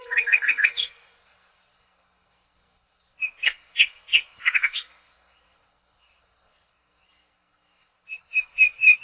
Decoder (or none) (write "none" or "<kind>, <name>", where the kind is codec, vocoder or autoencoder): codec, SNAC